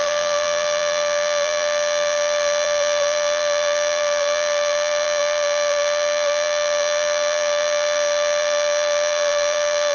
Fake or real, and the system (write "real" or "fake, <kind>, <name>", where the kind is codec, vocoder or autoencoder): fake, vocoder, BigVGAN v2